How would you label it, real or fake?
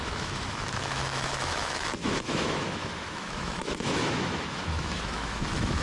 fake